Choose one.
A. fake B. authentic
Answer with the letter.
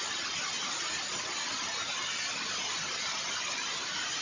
B